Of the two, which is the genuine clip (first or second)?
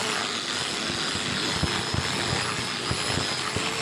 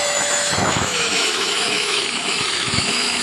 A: first